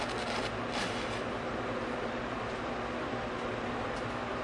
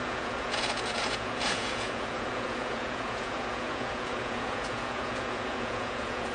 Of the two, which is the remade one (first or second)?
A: second